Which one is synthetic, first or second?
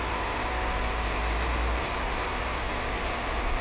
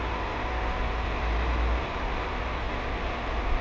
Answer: second